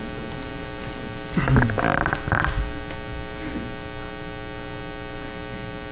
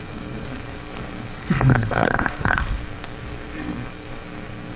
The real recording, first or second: first